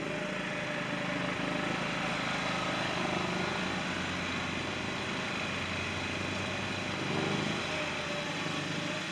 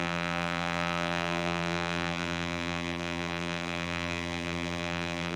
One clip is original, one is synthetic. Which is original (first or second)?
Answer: first